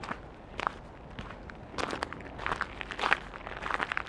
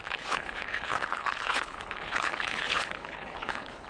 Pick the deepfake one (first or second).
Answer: second